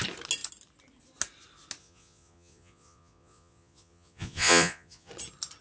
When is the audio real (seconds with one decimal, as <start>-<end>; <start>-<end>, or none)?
0.0-1.8; 5.1-5.6